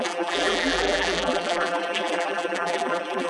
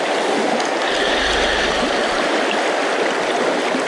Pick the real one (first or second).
second